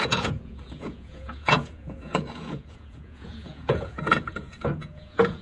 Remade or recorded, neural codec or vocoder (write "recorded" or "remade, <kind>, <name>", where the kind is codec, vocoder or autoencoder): remade, vocoder, Vocos